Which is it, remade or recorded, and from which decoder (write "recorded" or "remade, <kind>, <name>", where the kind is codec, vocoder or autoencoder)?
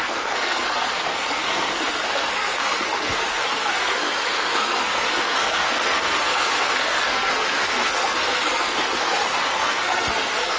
remade, codec, SNAC